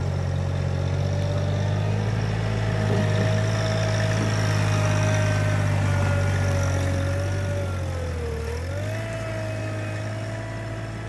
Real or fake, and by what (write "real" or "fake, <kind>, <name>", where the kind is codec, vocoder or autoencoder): real